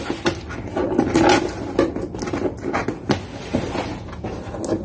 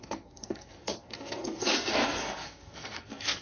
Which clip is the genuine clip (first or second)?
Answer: first